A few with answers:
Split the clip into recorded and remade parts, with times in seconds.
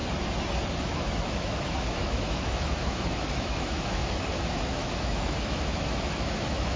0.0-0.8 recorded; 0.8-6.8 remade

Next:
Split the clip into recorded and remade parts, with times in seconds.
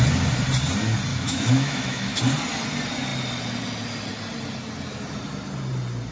0.0-1.1 recorded; 1.1-2.2 remade; 2.2-6.1 recorded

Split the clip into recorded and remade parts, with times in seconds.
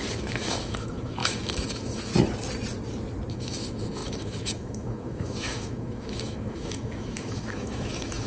0.0-2.1 remade; 2.1-3.3 recorded; 3.3-8.3 remade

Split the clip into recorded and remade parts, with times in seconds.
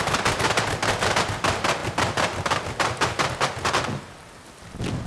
0.0-5.1 recorded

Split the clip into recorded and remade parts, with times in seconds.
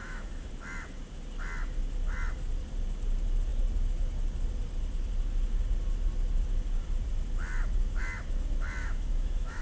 0.0-0.5 remade; 0.5-8.8 recorded; 8.8-9.6 remade